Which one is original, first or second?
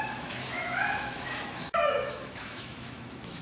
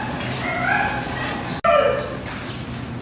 second